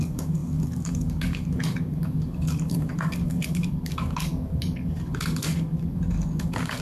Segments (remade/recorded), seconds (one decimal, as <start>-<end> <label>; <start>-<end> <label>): 0.0-6.8 remade